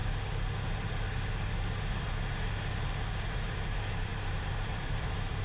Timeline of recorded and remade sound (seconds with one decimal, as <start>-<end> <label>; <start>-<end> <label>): 0.0-3.1 recorded; 3.1-5.4 remade